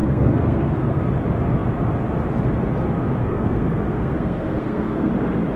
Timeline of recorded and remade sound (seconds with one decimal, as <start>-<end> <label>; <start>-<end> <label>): 0.0-1.0 remade; 1.0-3.2 recorded; 3.2-5.1 remade; 5.1-5.6 recorded